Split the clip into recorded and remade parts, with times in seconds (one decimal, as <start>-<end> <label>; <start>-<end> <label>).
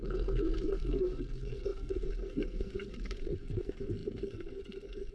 0.0-5.1 remade